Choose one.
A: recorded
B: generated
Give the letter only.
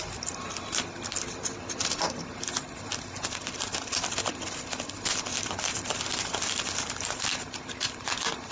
A